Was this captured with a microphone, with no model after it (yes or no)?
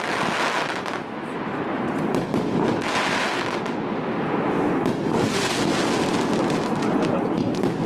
yes